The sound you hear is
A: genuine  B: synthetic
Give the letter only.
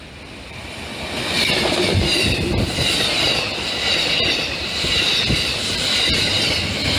B